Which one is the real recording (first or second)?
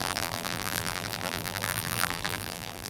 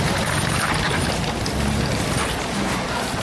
second